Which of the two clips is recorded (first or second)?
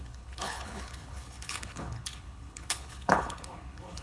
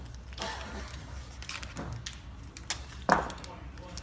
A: second